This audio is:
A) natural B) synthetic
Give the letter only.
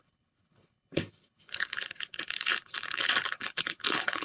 B